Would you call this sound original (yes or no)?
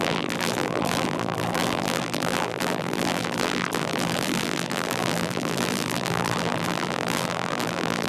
no